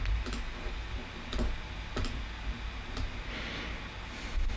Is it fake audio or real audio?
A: real